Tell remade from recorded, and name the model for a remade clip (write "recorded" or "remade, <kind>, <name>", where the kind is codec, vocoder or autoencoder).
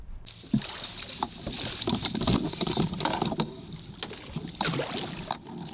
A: recorded